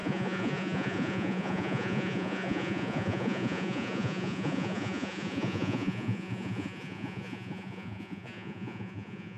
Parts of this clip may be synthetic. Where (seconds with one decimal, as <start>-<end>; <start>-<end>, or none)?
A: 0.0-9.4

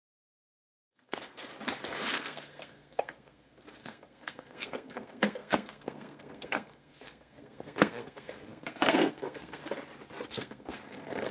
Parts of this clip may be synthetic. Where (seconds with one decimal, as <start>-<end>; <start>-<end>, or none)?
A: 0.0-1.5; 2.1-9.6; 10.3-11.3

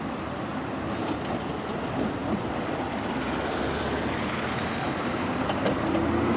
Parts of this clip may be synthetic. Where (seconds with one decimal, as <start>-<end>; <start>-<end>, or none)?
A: 2.2-6.0